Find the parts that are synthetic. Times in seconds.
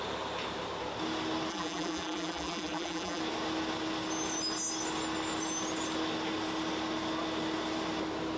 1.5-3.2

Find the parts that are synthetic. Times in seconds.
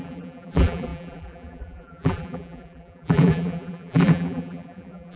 0.0-5.2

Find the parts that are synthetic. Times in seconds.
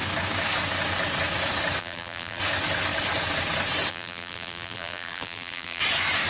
1.8-2.4; 3.9-5.8